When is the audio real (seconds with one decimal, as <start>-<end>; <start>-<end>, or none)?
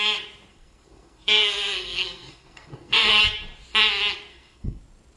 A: 0.0-0.5; 3.2-4.3; 4.8-5.2